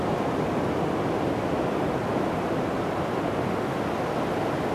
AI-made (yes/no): no